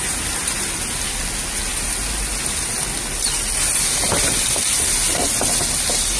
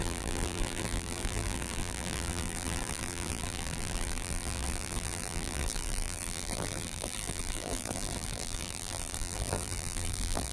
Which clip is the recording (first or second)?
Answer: first